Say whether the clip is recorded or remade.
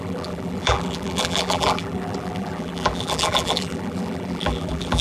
remade